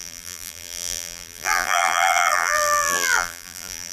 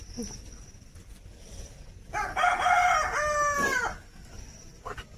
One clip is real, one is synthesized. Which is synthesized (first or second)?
first